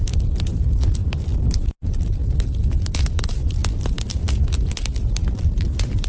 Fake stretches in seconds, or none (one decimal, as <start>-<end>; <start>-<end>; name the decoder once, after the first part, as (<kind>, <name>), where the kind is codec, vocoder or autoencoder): none